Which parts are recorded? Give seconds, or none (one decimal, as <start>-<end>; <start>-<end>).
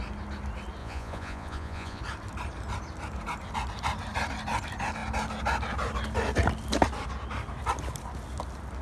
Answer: 0.0-0.8; 2.0-8.8